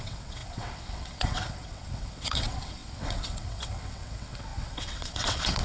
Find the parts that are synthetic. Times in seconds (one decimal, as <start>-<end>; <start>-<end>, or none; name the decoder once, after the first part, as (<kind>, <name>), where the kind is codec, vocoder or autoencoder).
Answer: 0.0-5.6 (vocoder, WaveNeXt)